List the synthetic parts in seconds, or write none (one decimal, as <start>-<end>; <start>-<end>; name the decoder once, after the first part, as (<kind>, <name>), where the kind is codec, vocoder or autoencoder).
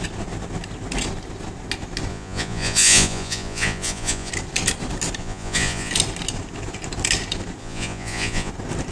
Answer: 2.1-4.3 (vocoder, Vocos); 5.2-5.9; 7.6-8.5